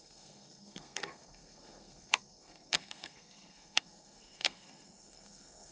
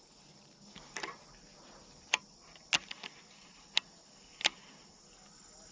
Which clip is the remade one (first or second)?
first